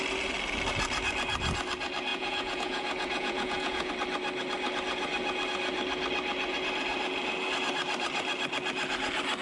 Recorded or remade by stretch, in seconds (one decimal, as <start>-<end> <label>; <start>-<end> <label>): 0.0-2.1 recorded; 2.1-3.9 remade; 3.9-9.4 recorded